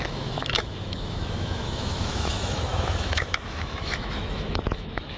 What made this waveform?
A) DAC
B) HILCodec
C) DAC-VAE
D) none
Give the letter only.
C